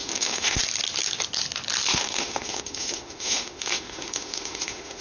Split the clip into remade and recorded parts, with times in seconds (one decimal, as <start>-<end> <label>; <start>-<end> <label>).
0.0-0.6 remade; 0.6-1.9 recorded; 1.9-5.0 remade